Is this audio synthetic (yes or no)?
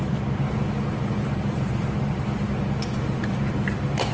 yes